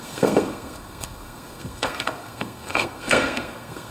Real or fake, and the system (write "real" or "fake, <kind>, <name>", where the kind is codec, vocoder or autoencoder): fake, codec, SNAC